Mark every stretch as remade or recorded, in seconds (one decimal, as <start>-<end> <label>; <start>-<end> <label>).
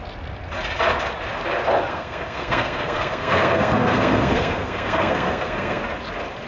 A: 0.0-1.9 recorded; 1.9-5.8 remade; 5.8-6.5 recorded